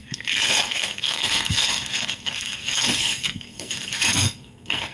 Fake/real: fake